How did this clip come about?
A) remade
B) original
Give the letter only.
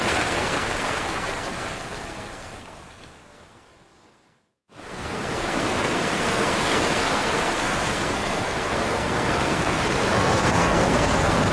A